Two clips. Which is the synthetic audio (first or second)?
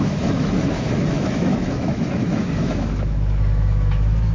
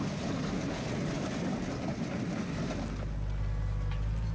first